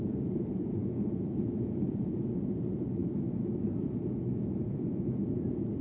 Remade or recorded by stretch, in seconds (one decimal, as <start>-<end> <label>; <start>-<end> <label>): 0.0-3.0 remade; 3.0-3.9 recorded; 3.9-5.8 remade